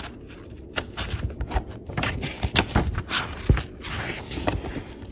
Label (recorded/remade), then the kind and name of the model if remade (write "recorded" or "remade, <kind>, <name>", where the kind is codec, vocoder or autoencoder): recorded